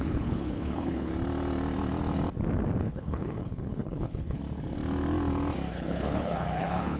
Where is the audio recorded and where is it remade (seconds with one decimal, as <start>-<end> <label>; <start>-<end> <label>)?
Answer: 0.0-1.1 remade; 1.1-2.8 recorded; 2.8-4.4 remade; 4.4-5.7 recorded; 5.7-7.0 remade